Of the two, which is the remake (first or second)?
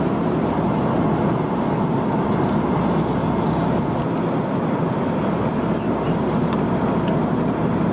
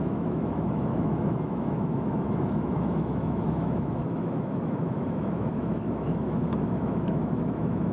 second